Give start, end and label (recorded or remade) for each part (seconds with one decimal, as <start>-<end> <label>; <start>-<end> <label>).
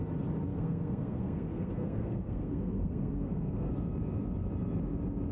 0.0-0.5 recorded; 0.5-3.7 remade; 3.7-5.3 recorded